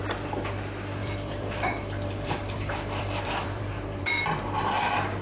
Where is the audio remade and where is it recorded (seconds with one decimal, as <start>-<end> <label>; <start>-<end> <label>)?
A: 0.0-1.0 recorded; 1.0-4.1 remade; 4.1-5.2 recorded